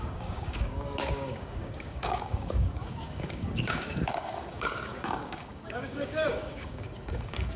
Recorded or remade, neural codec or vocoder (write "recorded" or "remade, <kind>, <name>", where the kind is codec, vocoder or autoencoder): remade, codec, DAC